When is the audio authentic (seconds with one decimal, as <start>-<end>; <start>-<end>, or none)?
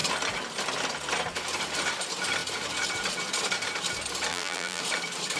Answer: 0.0-4.3; 4.8-5.4